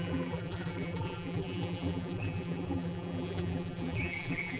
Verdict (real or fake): fake